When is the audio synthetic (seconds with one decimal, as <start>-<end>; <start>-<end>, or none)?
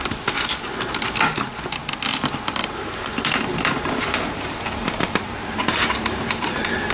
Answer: 2.6-6.9